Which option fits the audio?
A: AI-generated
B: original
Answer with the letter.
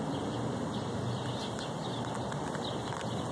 B